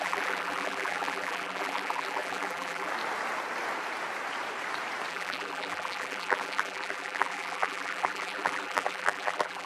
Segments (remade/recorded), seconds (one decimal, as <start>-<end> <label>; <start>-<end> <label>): 0.0-2.9 remade; 2.9-5.1 recorded; 5.1-9.7 remade